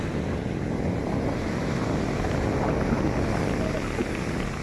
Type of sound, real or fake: real